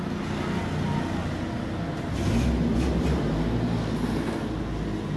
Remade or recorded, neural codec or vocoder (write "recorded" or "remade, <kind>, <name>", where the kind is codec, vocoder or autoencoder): recorded